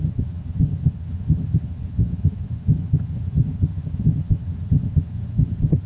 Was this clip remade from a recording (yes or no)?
yes